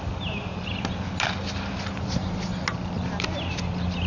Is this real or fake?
real